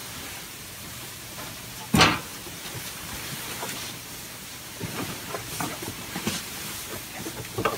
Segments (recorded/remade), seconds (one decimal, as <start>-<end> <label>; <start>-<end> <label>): 0.0-1.9 remade; 1.9-2.3 recorded; 2.3-6.7 remade; 6.7-7.8 recorded